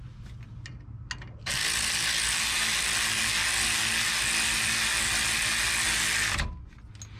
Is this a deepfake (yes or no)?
no